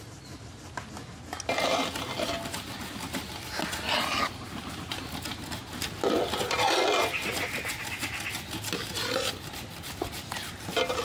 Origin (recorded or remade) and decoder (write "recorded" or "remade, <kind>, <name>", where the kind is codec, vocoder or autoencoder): recorded